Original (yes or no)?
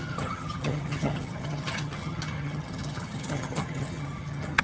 no